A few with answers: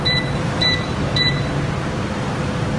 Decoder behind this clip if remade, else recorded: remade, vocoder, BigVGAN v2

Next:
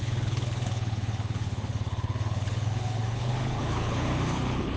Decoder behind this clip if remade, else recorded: remade, codec, HILCodec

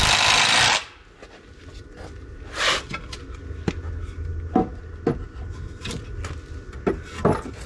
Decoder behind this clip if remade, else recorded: recorded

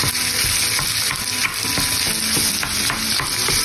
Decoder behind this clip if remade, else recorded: recorded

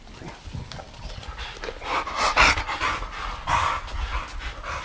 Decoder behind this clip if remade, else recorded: recorded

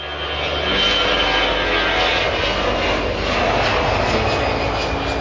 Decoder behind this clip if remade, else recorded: recorded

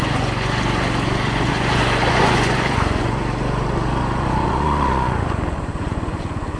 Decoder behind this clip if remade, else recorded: remade, vocoder, Vocos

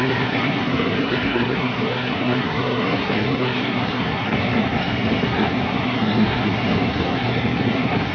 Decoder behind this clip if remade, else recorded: remade, codec, SNAC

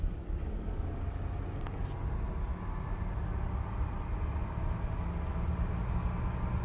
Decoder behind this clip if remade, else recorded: recorded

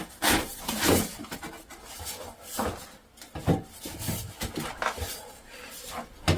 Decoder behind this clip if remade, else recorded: recorded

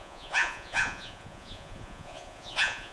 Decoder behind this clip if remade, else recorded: remade, vocoder, Vocos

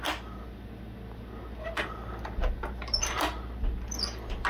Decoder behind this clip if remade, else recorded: recorded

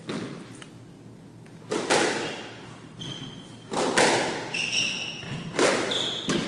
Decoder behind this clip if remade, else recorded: recorded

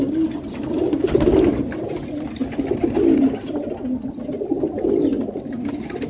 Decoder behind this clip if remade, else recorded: recorded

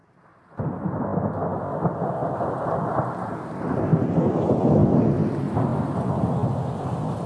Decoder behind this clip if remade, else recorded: recorded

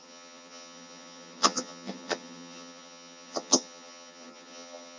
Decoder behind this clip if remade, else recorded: remade, vocoder, HiFi-GAN